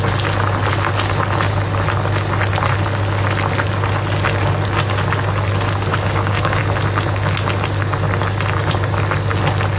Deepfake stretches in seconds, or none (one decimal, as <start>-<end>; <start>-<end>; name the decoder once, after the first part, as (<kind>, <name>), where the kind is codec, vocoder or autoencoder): 5.9-6.6 (codec, DAC)